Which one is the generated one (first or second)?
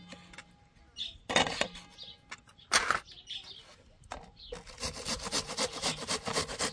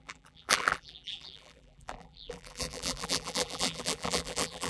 second